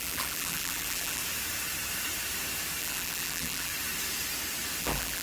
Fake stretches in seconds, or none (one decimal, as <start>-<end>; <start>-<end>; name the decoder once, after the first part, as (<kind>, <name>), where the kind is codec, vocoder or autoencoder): 0.0-1.2 (vocoder, BigVGAN v2); 2.8-3.7; 4.8-5.2